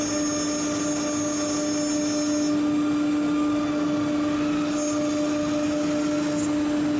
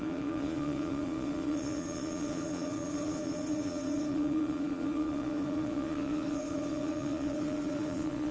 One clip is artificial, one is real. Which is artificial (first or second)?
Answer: second